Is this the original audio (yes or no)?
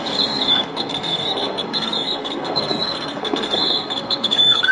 no